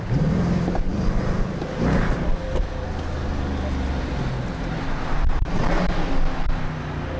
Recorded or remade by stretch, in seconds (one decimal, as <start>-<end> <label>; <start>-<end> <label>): 0.0-7.2 recorded

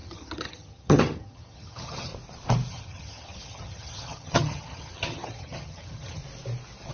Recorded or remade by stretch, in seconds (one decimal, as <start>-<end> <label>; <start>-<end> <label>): 0.0-2.1 remade; 2.1-2.7 recorded; 2.7-6.2 remade; 6.2-6.9 recorded

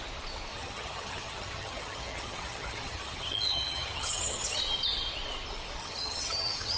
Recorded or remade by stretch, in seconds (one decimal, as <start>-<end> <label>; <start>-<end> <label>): 0.0-0.5 recorded; 0.5-4.6 remade; 4.6-5.8 recorded; 5.8-6.8 remade

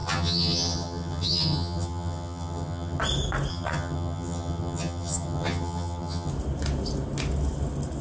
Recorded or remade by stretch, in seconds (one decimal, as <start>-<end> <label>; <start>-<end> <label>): 0.0-3.0 remade; 3.0-3.5 recorded; 3.5-6.3 remade; 6.3-8.0 recorded